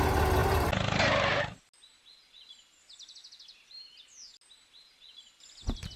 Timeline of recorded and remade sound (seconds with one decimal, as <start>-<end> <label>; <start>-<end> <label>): 0.0-6.0 recorded